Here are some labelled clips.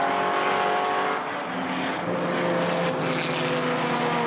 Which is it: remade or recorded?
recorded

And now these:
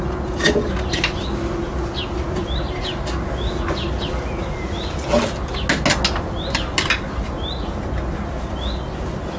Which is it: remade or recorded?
recorded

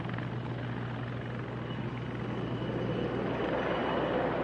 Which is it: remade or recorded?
recorded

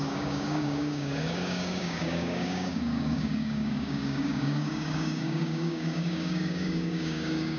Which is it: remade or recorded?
remade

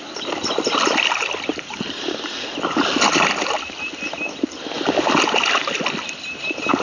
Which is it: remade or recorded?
recorded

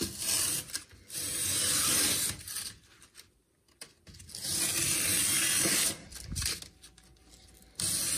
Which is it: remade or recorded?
recorded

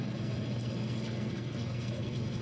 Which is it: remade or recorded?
remade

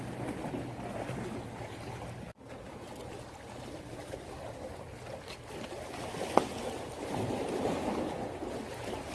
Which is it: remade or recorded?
recorded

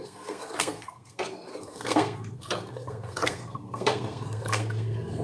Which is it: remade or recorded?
remade